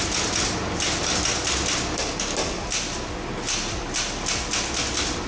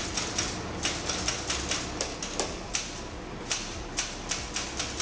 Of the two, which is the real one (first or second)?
first